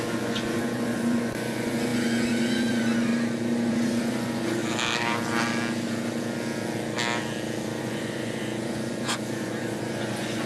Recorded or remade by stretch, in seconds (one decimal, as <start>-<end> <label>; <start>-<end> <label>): 0.0-3.1 remade; 3.1-3.7 recorded; 3.7-4.6 remade; 4.6-7.8 recorded; 7.8-10.5 remade

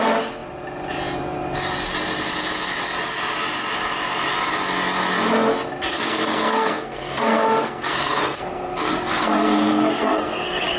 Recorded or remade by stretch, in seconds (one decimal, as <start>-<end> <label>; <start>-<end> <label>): 0.0-5.9 recorded; 5.9-10.8 remade

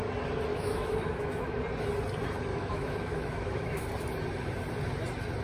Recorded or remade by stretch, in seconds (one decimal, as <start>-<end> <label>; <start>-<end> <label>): 0.0-0.5 recorded; 0.5-1.6 remade; 1.6-2.5 recorded; 2.5-3.8 remade; 3.8-5.4 recorded

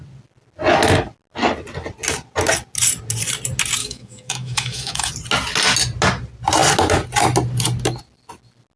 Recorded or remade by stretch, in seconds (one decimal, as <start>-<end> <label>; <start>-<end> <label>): 0.0-3.8 recorded; 3.8-5.1 remade; 5.1-8.8 recorded

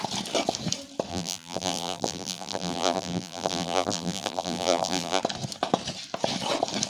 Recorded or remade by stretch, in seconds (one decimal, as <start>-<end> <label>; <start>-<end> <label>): 0.0-1.1 recorded; 1.1-5.2 remade; 5.2-6.9 recorded

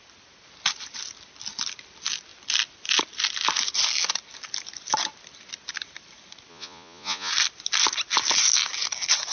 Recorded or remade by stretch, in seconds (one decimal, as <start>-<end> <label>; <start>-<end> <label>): 0.0-6.5 recorded; 6.5-7.3 remade; 7.3-9.3 recorded